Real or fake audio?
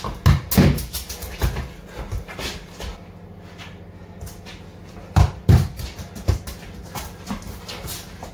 real